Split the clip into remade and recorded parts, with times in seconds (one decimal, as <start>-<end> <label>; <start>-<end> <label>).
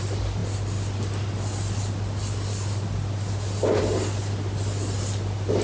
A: 0.0-5.6 recorded